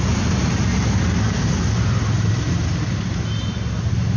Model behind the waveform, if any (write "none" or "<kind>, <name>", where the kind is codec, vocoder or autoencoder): none